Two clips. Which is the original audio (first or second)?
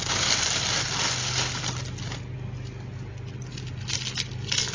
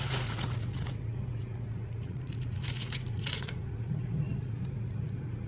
first